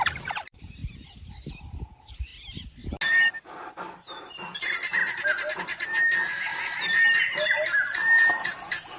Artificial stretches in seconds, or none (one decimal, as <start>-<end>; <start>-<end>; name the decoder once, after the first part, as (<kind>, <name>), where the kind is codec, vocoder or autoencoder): 0.0-0.8 (vocoder, BigVGAN v2); 1.6-2.3; 4.6-6.5